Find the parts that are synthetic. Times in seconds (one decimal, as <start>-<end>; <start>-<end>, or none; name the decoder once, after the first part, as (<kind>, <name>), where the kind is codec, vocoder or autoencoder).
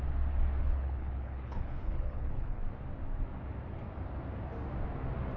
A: 0.6-2.6 (codec, HILCodec)